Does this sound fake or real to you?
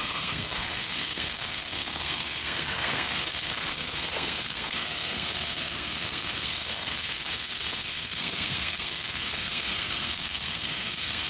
fake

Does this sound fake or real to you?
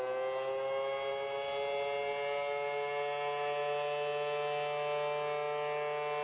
real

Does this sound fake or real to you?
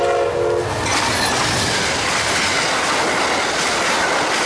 real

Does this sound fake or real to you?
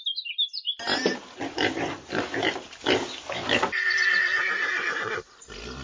real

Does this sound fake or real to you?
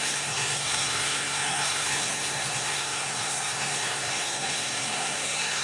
fake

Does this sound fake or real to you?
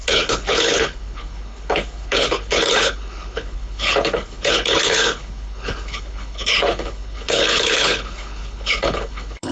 fake